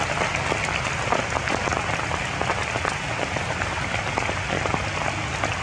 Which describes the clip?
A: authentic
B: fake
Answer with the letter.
A